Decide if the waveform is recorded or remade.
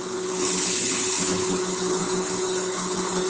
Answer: remade